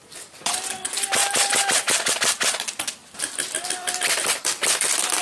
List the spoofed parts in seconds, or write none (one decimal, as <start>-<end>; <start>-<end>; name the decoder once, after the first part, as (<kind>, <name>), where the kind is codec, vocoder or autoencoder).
0.0-5.2 (vocoder, BigVGAN v2)